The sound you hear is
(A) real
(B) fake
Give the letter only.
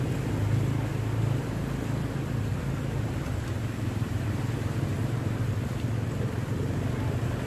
A